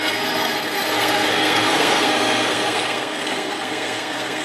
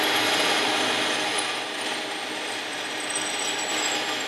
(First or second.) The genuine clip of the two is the second